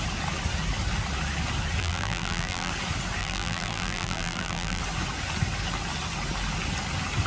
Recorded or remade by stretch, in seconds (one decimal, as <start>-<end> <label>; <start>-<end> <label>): 0.0-1.8 recorded; 1.8-2.7 remade; 2.7-3.2 recorded; 3.2-4.8 remade; 4.8-7.3 recorded